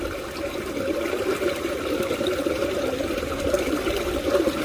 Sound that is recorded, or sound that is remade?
recorded